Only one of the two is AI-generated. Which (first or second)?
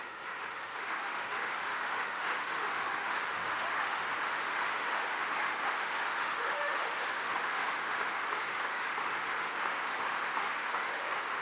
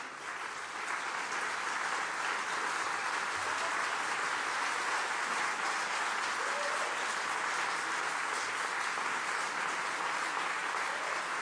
first